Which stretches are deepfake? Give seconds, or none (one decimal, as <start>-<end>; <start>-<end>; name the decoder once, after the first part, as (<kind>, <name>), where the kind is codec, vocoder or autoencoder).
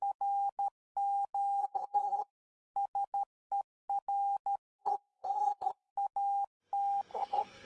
1.6-2.3 (codec, SNAC); 4.8-5.9; 7.1-7.7